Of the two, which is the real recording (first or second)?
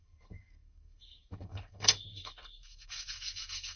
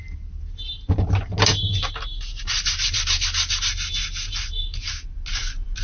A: second